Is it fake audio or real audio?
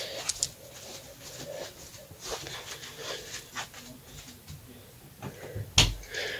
real